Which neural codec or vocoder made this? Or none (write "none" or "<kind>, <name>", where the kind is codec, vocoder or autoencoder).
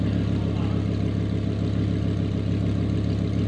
none